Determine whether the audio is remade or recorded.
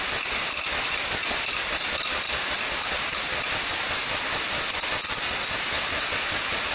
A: recorded